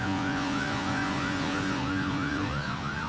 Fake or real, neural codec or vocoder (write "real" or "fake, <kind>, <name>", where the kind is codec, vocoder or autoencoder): fake, vocoder, Vocos